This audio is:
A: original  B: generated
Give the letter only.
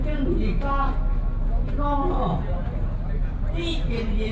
A